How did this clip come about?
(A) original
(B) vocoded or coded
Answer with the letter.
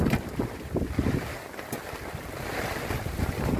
A